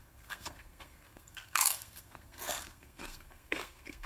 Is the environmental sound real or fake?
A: fake